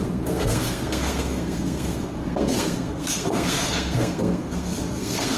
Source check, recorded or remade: remade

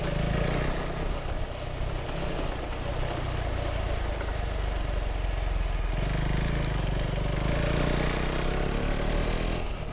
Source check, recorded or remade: recorded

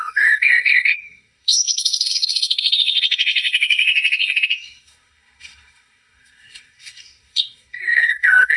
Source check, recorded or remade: remade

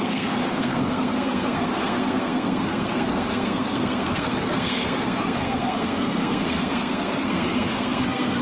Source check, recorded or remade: remade